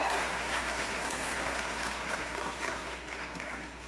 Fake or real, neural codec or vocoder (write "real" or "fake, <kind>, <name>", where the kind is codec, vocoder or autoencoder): fake, codec, SNAC